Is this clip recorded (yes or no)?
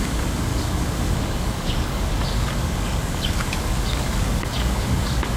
no